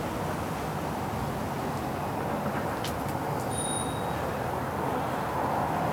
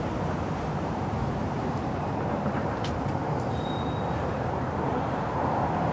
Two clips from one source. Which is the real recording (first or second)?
first